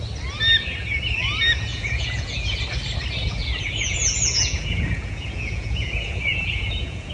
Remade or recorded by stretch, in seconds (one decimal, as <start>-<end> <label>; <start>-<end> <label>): 0.0-1.7 recorded; 1.7-2.6 remade; 2.6-3.4 recorded; 3.4-7.1 remade